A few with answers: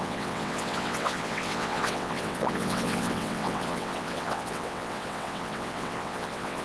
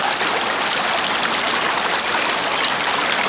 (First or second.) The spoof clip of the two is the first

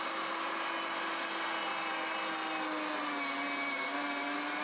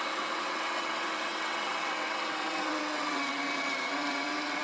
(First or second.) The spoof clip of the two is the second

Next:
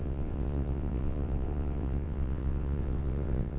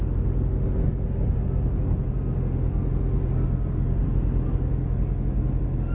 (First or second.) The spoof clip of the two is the first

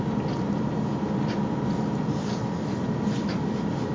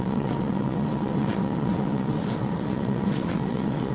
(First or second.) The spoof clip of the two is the second